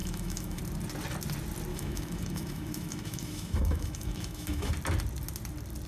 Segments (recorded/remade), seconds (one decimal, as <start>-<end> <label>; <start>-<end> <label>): 0.0-0.6 remade; 0.6-1.7 recorded; 1.7-4.7 remade; 4.7-5.9 recorded